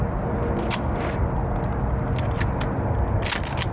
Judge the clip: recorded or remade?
recorded